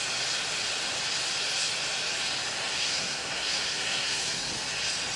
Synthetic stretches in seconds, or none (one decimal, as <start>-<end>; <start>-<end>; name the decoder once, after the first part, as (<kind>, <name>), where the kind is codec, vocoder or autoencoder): 2.7-4.5 (codec, SNAC)